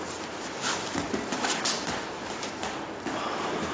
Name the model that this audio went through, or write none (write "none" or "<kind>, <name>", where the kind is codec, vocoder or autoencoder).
none